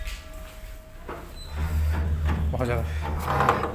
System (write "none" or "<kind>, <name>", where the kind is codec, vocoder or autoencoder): none